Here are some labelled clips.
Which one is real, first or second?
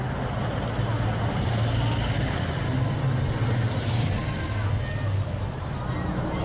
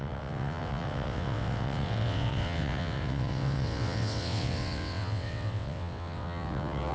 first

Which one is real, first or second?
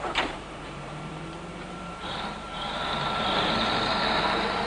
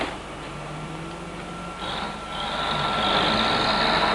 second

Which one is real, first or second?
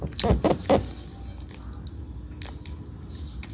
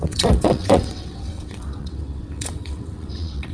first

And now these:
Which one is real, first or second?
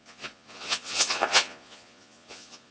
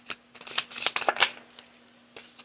second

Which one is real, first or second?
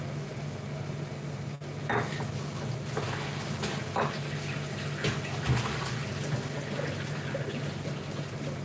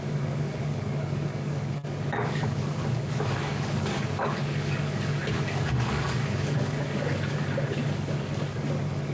first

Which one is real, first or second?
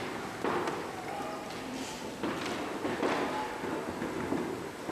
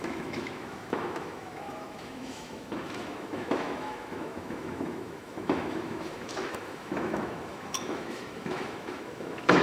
first